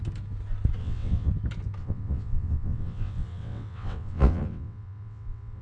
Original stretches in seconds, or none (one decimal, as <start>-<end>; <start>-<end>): 0.0-0.8; 1.3-1.8